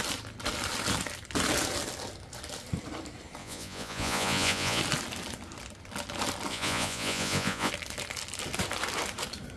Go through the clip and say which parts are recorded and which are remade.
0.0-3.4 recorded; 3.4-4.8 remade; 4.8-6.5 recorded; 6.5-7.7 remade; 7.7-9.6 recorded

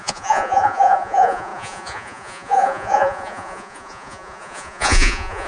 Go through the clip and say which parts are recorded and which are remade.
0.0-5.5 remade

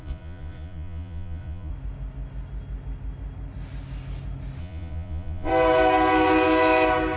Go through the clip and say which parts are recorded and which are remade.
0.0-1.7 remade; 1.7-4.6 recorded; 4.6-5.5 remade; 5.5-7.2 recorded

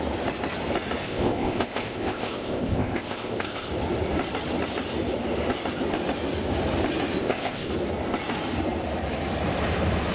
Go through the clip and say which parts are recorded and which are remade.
0.0-1.0 recorded; 1.0-3.7 remade; 3.7-7.2 recorded; 7.2-7.7 remade; 7.7-10.1 recorded

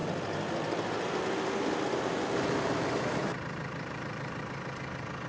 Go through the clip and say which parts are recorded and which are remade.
0.0-3.2 recorded; 3.2-4.4 remade; 4.4-5.3 recorded

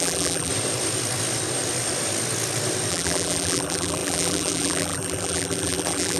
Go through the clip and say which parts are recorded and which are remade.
0.0-0.5 remade; 0.5-2.9 recorded; 2.9-6.2 remade

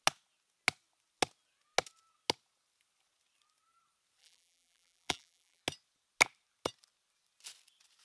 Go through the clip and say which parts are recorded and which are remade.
0.0-4.2 recorded; 4.2-5.6 remade; 5.6-8.0 recorded